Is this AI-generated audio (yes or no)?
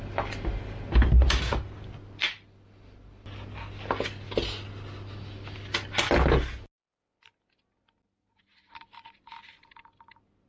no